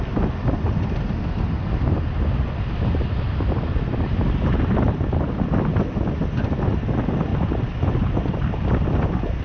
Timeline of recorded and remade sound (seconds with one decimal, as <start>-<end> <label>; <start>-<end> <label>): 0.0-9.4 recorded